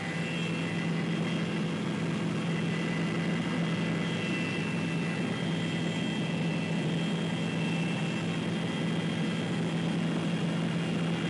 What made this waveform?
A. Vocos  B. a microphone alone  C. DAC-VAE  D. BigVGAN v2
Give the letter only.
B